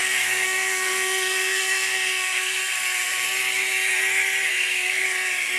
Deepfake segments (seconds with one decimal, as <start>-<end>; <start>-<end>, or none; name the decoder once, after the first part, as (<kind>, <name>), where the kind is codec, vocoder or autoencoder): 0.0-2.6 (codec, SNAC); 4.5-5.0